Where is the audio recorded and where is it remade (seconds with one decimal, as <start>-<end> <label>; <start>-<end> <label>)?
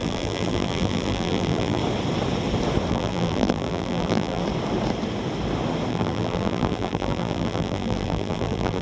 0.0-1.8 remade; 1.8-2.9 recorded; 2.9-4.4 remade; 4.4-5.9 recorded; 5.9-8.8 remade